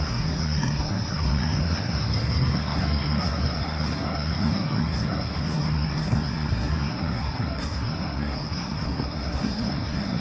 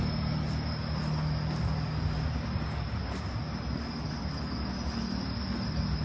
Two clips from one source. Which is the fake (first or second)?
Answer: first